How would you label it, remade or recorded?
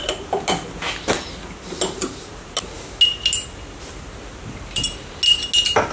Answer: recorded